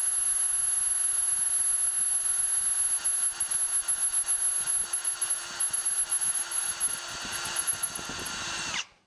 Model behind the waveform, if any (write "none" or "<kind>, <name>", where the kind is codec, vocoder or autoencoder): none